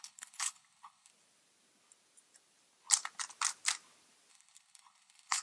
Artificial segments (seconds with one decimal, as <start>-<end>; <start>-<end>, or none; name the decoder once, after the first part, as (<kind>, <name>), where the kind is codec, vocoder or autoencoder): 0.0-1.1 (codec, HILCodec); 4.3-5.4